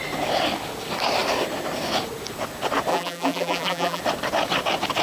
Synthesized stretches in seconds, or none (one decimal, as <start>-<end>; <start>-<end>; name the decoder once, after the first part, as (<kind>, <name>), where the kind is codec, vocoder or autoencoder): 2.9-4.0 (vocoder, BigVGAN v2)